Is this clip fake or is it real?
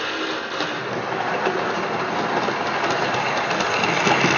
real